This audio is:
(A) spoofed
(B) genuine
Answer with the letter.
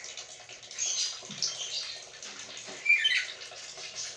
B